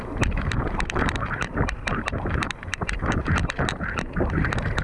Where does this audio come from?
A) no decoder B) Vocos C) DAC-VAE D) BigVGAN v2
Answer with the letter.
D